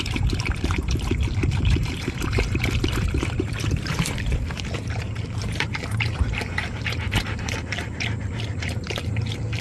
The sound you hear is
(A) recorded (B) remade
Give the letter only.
B